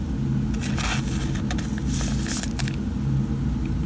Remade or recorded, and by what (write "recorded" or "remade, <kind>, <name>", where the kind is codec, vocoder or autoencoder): recorded